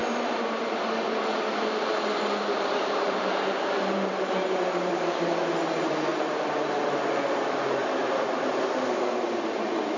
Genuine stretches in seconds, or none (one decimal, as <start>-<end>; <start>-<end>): 0.0-2.2; 6.1-7.1